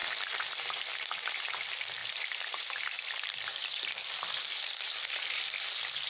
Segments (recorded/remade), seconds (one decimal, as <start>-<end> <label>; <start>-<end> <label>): 0.0-1.0 remade; 1.0-2.0 recorded; 2.0-6.1 remade